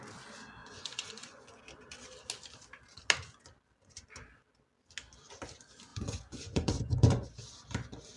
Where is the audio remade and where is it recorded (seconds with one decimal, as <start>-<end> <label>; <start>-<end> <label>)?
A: 0.0-0.6 recorded; 0.6-1.6 remade; 1.6-5.9 recorded; 5.9-7.3 remade; 7.3-8.2 recorded